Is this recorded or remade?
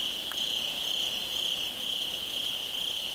remade